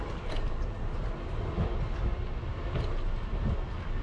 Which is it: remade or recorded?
recorded